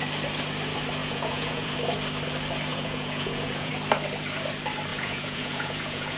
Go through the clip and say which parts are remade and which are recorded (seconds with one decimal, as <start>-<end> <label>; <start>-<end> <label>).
0.0-1.0 recorded; 1.0-1.7 remade; 1.7-2.7 recorded; 2.7-3.7 remade; 3.7-4.9 recorded; 4.9-6.2 remade